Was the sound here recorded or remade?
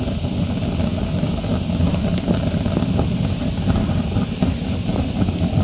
recorded